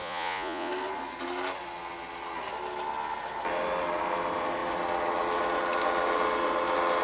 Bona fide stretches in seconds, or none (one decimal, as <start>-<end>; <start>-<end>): 0.7-7.0